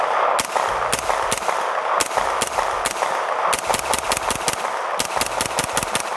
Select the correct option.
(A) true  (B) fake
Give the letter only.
A